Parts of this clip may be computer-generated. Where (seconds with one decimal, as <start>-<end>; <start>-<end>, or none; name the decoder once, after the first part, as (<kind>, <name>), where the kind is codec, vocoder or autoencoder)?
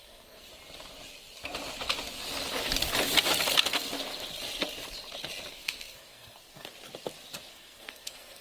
0.0-0.5 (codec, SNAC); 5.5-6.7; 7.5-8.4